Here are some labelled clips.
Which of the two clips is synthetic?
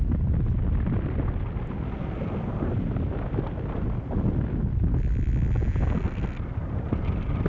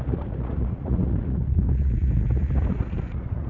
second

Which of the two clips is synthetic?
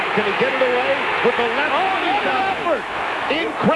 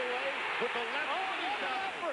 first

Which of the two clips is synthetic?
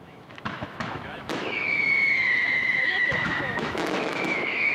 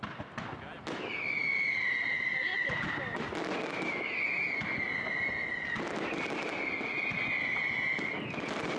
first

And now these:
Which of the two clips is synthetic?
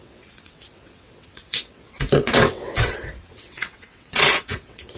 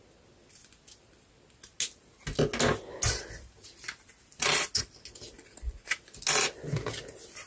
first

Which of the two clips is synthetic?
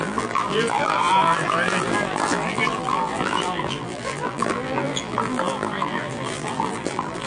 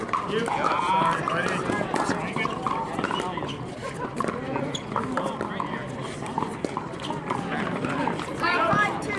first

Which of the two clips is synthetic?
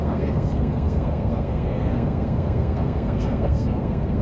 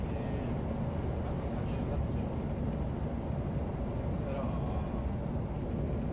first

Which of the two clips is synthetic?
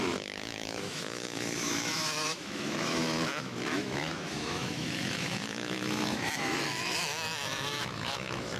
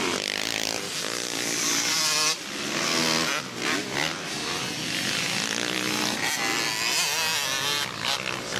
first